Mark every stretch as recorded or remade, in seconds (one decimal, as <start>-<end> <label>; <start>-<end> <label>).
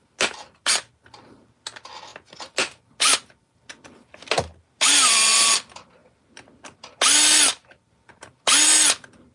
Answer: 0.0-9.3 recorded